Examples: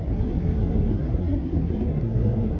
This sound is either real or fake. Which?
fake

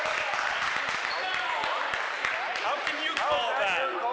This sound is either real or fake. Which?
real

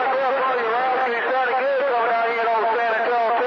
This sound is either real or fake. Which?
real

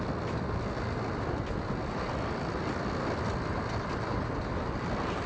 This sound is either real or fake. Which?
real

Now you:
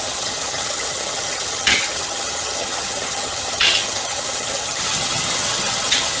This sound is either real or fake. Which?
fake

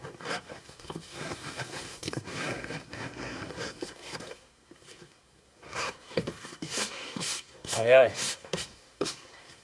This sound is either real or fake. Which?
fake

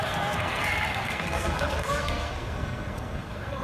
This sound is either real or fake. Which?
fake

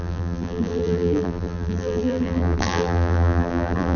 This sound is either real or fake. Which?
fake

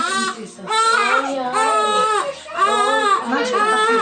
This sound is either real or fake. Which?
real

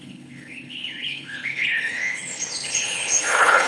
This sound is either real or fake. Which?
fake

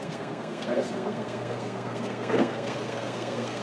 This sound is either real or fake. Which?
fake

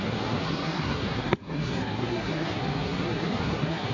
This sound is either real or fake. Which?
fake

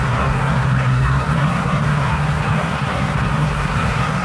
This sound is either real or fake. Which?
fake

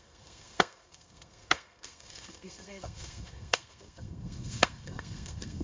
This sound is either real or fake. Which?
fake